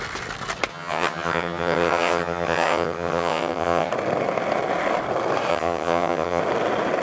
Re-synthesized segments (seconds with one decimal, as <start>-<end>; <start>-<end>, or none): 0.7-3.9; 5.5-6.4